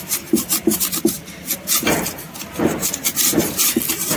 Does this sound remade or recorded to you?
recorded